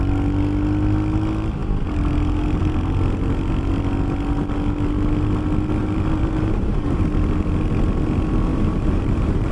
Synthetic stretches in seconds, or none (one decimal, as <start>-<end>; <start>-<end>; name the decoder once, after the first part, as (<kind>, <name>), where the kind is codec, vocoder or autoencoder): 5.8-7.0 (vocoder, BigVGAN v2); 8.5-9.5